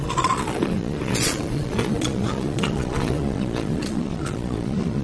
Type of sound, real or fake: fake